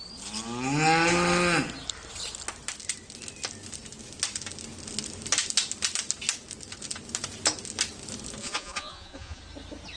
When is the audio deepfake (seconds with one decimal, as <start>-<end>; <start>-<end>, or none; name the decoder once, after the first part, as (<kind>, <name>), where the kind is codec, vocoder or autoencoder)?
8.4-9.4 (vocoder, Vocos)